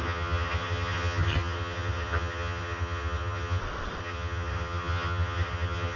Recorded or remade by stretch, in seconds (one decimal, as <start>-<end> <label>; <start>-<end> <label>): 0.0-3.6 remade; 3.6-4.0 recorded; 4.0-6.0 remade